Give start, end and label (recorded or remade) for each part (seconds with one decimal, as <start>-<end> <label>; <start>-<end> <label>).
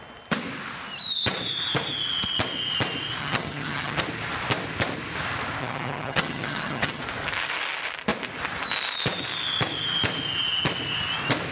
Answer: 0.0-3.2 recorded; 3.2-4.0 remade; 4.0-5.6 recorded; 5.6-7.0 remade; 7.0-11.5 recorded